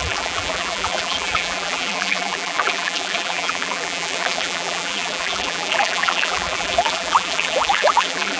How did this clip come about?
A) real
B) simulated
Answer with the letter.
B